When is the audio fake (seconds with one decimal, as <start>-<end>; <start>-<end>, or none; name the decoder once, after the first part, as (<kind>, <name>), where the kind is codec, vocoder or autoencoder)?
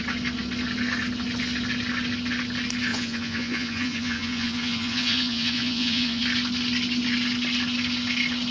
2.9-6.2 (vocoder, Vocos)